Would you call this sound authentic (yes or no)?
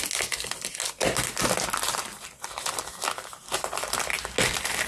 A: yes